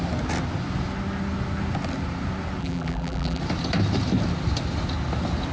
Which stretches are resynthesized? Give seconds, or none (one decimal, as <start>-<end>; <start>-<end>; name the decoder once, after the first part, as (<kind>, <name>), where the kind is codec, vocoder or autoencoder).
2.6-3.4 (vocoder, BigVGAN v2)